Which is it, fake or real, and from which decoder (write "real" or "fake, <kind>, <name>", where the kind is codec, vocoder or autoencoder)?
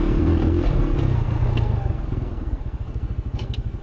fake, codec, SNAC